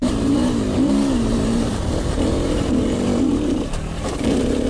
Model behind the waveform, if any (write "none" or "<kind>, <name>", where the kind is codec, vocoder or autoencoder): vocoder, BigVGAN v2